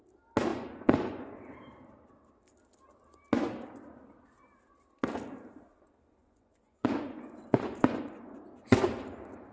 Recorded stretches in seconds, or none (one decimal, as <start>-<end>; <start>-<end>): 0.0-0.5; 1.4-6.2; 8.4-9.5